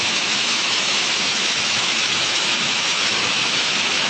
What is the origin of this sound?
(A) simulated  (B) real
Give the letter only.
A